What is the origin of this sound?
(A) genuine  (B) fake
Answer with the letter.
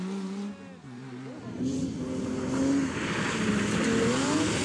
A